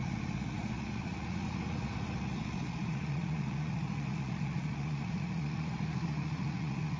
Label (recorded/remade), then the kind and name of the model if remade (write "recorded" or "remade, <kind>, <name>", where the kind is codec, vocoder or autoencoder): remade, vocoder, Vocos